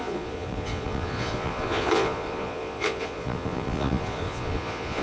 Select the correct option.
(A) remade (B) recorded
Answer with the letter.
A